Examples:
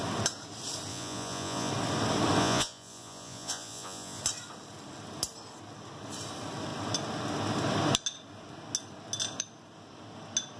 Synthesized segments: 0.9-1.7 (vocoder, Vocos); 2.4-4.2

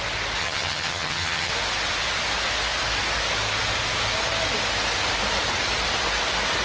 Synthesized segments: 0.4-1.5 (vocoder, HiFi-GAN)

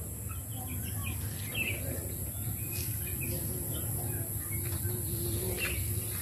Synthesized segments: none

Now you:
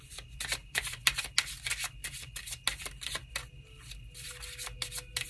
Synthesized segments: 0.6-1.2 (vocoder, BigVGAN v2)

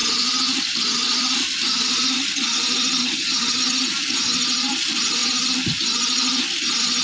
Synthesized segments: 3.0-3.6 (vocoder, HiFi-GAN)

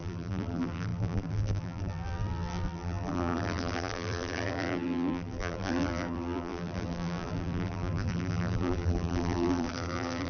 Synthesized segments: 0.0-10.3 (vocoder, BigVGAN v2)